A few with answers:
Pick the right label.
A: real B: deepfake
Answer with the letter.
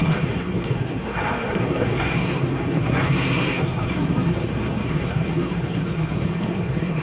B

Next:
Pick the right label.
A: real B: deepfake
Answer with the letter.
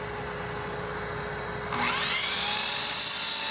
A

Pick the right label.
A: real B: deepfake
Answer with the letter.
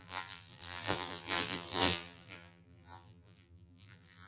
B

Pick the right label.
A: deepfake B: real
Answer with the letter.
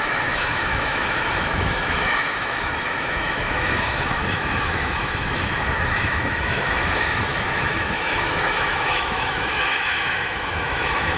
A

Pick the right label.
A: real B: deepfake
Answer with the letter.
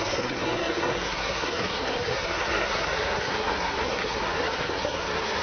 B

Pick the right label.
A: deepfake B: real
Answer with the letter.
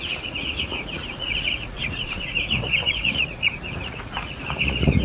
A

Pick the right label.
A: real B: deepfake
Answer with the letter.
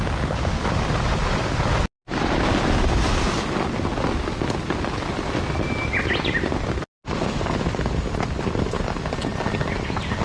A